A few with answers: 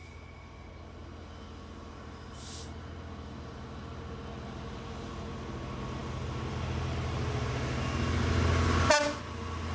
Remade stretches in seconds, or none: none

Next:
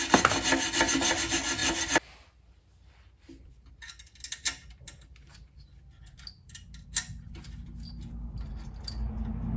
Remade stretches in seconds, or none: none

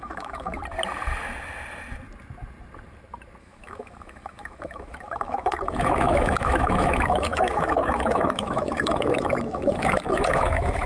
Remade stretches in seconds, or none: 0.0-0.6 (autoencoder, DAC-VAE); 3.4-10.9

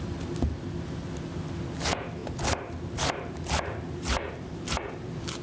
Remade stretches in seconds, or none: none

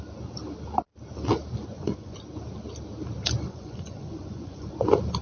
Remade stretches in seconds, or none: 1.7-2.2 (vocoder, Vocos); 3.5-4.7